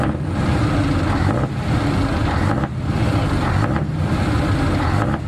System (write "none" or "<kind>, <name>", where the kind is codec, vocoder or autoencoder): none